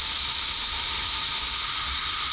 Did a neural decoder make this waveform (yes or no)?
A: yes